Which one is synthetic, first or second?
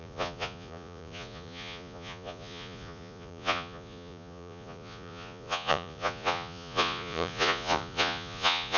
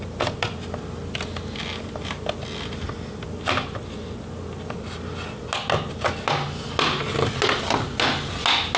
first